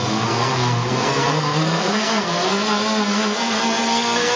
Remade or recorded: remade